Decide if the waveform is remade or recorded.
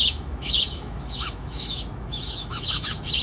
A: remade